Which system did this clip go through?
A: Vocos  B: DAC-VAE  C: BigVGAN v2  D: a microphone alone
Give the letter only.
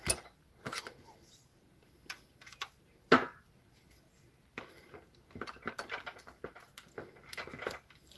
D